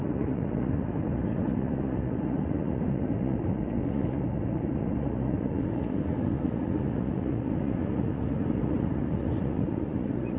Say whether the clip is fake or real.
fake